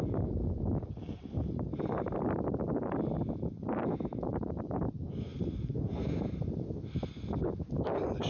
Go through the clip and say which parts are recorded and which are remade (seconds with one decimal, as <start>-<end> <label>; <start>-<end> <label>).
0.0-8.3 recorded